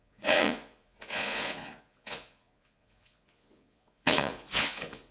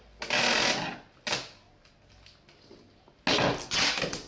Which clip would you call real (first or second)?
second